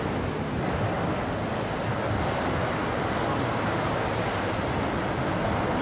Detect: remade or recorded recorded